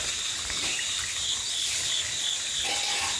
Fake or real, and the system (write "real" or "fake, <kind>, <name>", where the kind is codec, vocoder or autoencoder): real